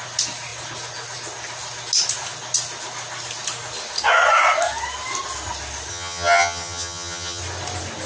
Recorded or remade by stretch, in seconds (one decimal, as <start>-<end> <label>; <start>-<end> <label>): 0.0-5.9 recorded; 5.9-7.4 remade; 7.4-8.1 recorded